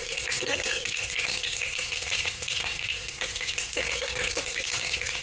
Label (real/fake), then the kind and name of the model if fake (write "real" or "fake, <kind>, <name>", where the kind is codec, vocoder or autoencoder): fake, codec, SNAC